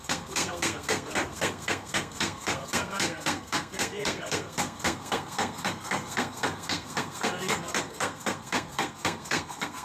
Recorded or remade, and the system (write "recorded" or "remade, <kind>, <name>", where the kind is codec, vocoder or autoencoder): remade, codec, SNAC